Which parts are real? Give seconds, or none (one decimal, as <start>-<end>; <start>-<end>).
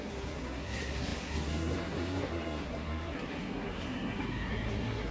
none